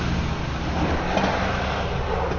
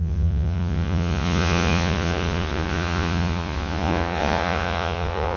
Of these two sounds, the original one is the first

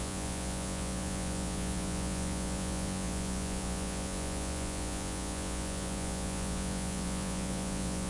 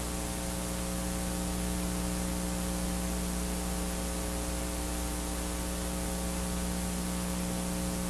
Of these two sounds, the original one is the second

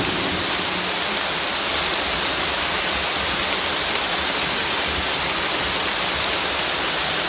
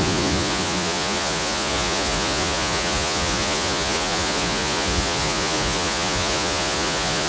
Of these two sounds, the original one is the first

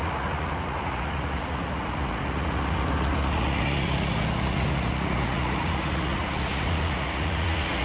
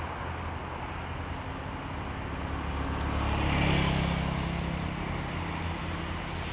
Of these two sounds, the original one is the second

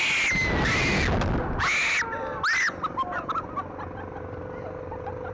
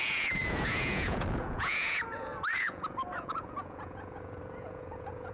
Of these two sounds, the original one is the first